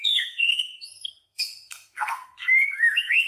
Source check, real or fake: fake